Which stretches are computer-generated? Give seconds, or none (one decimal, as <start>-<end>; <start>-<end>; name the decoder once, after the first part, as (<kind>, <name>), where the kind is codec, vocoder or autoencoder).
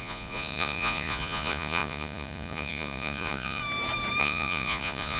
0.0-3.6 (vocoder, Vocos); 4.2-5.2